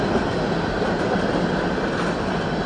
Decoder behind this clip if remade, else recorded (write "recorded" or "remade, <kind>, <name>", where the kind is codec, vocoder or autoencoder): recorded